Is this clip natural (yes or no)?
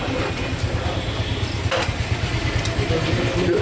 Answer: yes